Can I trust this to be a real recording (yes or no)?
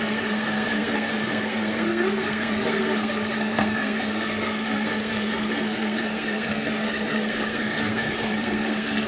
no